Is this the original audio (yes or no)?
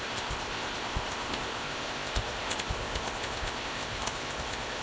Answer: no